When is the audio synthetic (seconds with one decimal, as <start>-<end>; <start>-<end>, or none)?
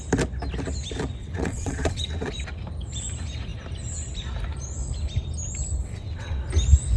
1.2-2.3; 5.8-6.4